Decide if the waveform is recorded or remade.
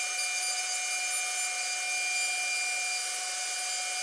recorded